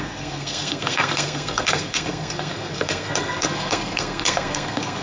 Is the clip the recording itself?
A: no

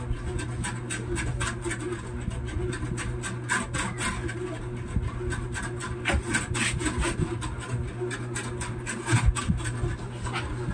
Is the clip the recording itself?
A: yes